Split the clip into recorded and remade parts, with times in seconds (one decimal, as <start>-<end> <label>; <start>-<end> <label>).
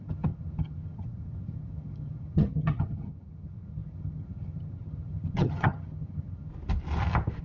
0.0-6.5 remade; 6.5-7.4 recorded